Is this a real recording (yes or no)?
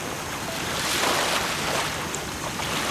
yes